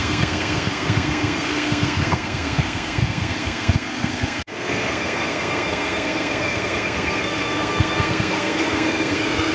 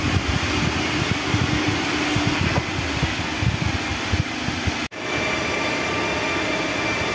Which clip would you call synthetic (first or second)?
first